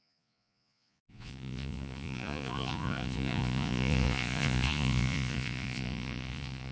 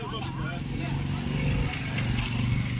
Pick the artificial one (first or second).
first